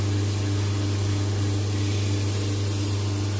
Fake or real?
real